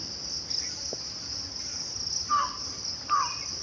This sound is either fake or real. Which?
real